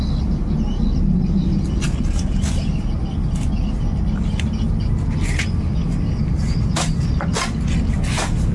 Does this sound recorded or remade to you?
recorded